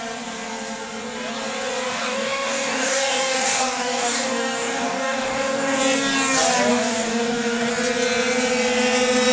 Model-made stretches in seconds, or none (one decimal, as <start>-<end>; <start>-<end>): 1.9-5.8; 6.7-7.7